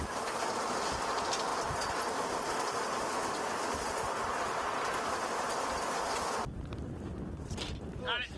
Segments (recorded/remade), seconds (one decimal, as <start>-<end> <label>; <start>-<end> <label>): 0.0-8.4 recorded